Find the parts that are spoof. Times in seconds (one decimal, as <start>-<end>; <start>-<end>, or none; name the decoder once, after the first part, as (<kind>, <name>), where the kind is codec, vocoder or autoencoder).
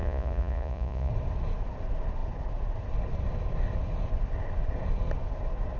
0.0-1.1 (vocoder, Vocos)